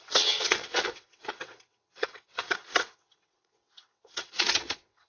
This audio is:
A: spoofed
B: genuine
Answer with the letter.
A